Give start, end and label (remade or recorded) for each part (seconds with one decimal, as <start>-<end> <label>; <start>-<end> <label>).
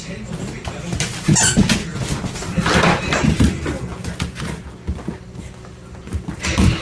0.0-6.8 recorded